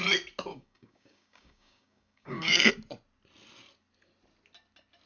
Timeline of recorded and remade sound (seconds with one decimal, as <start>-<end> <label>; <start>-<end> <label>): 0.0-0.5 recorded; 0.5-2.7 remade; 2.7-5.1 recorded